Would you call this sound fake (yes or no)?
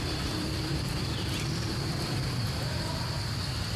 yes